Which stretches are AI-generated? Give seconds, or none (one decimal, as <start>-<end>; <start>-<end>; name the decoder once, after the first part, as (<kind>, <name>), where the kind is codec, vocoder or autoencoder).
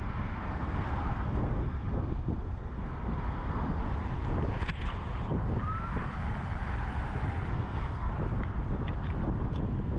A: 0.0-3.8 (codec, SNAC); 7.5-8.1